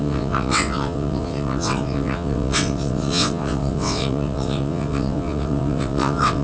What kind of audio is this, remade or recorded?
remade